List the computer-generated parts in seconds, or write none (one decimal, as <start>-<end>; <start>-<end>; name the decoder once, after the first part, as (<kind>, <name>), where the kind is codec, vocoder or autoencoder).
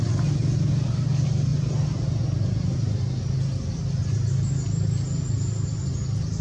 none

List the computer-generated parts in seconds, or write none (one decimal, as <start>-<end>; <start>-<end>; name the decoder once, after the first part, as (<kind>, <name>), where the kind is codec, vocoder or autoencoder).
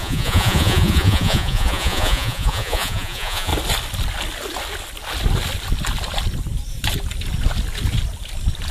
0.0-3.5 (vocoder, Vocos)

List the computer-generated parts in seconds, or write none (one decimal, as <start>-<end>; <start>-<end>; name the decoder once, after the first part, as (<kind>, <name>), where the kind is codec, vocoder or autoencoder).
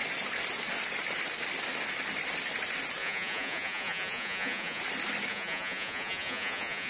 3.0-4.8 (vocoder, Vocos); 5.3-6.9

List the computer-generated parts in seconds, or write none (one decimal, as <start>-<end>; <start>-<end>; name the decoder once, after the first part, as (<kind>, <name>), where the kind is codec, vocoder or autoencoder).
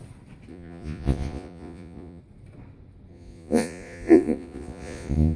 0.5-2.2 (vocoder, Vocos); 3.1-5.4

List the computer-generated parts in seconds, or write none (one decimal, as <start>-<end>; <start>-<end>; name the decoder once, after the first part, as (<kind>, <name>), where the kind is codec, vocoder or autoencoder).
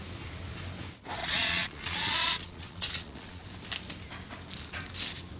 1.2-3.4 (vocoder, Vocos)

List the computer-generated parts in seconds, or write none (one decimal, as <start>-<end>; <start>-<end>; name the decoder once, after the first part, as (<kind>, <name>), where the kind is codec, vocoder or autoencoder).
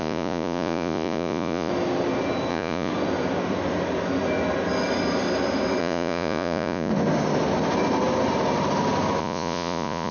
0.0-1.7 (vocoder, Vocos); 2.5-2.9; 5.8-6.9; 9.2-10.1